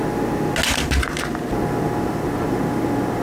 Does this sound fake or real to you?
real